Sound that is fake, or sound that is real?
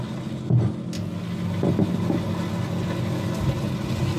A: real